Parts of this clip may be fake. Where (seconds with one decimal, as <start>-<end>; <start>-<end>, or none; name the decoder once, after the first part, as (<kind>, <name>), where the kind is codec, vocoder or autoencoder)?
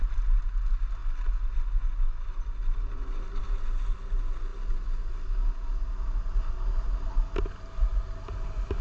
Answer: none